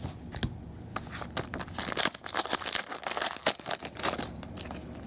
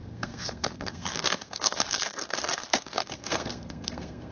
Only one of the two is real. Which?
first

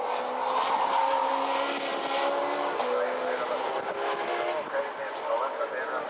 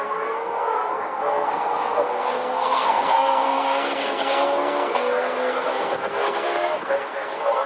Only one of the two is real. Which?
first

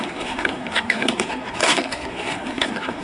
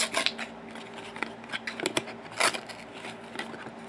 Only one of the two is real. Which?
second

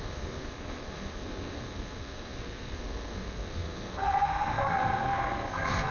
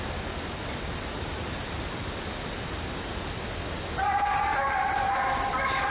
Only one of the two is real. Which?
second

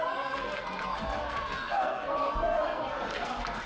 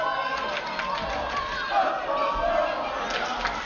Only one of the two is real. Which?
second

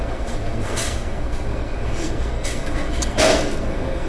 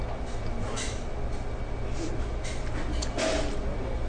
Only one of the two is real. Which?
second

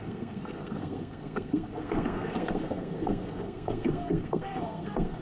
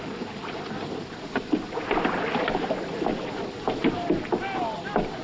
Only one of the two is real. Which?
second